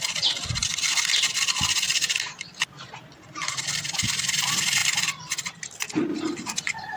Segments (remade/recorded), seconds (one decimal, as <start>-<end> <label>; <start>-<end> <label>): 0.0-7.0 recorded